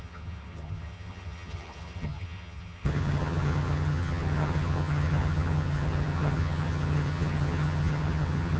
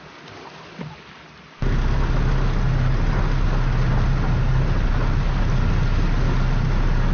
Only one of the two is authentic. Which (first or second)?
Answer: second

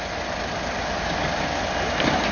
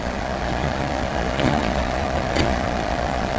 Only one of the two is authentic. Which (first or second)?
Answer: first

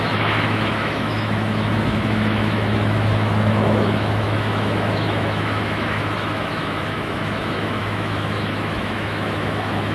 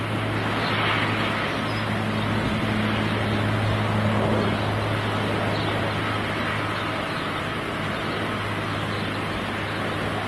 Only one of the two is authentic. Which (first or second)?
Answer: second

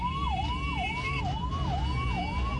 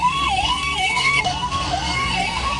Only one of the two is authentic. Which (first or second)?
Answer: first